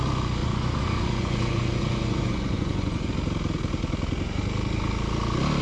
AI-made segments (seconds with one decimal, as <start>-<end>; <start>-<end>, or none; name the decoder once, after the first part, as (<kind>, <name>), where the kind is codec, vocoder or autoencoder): 0.4-3.1 (vocoder, Vocos)